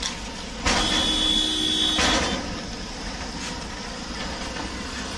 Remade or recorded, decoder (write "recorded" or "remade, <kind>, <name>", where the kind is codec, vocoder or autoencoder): recorded